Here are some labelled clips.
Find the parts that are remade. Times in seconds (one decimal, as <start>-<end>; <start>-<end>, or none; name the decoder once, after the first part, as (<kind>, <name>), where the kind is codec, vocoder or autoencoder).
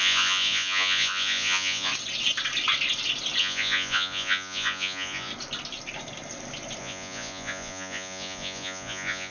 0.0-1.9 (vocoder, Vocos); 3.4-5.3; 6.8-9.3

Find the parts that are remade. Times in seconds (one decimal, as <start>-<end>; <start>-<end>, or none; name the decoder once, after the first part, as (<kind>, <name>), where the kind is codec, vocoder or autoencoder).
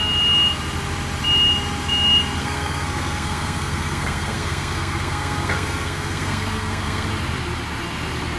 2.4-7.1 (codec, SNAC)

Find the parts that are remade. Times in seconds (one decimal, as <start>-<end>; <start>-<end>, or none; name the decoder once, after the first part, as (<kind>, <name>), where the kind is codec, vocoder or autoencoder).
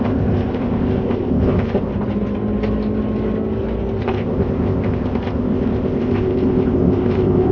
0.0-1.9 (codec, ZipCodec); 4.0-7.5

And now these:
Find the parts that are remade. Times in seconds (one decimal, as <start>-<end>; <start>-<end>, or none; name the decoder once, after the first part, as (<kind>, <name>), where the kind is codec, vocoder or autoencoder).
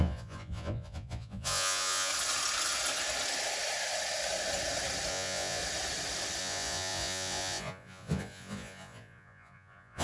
0.0-2.1 (vocoder, Vocos); 5.1-5.6; 6.4-10.0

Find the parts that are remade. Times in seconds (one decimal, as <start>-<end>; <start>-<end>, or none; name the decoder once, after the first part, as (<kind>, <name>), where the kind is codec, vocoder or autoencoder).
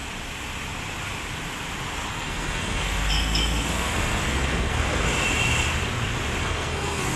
2.1-5.1 (codec, SNAC); 6.4-7.2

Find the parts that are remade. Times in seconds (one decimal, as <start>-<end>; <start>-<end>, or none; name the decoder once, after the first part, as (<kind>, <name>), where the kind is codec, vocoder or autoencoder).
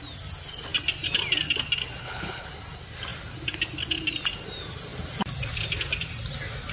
2.0-2.5 (codec, HILCodec)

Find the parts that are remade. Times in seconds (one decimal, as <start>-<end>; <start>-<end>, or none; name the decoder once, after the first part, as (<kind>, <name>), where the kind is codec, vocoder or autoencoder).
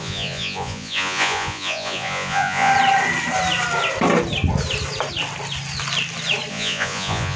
0.0-2.7 (vocoder, Vocos); 6.5-7.4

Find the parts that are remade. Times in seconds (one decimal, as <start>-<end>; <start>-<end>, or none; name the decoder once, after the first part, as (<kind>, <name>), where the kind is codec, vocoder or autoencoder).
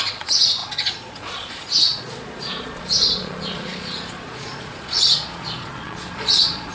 0.0-6.7 (vocoder, Vocos)